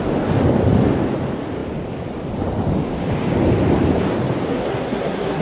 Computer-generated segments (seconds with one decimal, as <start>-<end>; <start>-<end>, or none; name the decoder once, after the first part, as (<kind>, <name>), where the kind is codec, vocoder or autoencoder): 4.5-5.4 (codec, SNAC)

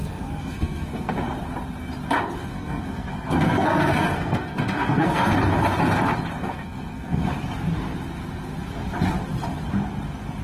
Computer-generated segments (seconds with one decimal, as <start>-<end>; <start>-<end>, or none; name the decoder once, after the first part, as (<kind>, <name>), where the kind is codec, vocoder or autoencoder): 0.0-1.1 (codec, SNAC); 2.5-5.3; 6.4-7.3

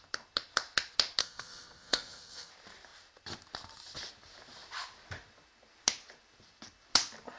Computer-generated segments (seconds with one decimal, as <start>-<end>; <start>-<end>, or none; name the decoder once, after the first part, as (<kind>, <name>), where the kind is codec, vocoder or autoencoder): 1.2-2.5 (codec, SNAC)

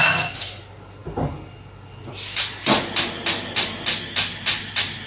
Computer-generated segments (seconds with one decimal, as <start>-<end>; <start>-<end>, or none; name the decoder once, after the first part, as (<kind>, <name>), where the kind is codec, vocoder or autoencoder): 0.0-0.6 (codec, SNAC)

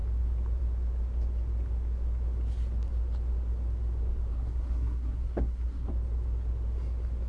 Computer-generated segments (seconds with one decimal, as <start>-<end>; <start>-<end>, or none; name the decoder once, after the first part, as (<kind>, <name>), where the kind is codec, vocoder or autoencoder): 4.3-5.9 (codec, SNAC)